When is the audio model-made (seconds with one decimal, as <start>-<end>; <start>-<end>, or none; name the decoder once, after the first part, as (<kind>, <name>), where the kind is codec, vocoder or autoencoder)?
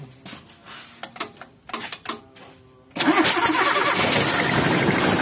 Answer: none